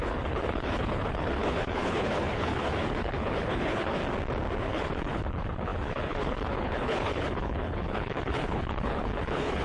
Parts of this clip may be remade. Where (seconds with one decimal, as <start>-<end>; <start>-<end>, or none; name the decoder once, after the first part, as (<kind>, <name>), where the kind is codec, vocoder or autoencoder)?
0.0-4.0 (codec, HILCodec); 4.6-9.6